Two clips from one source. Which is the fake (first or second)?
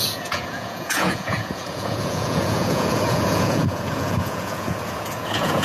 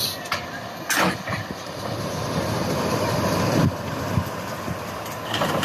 first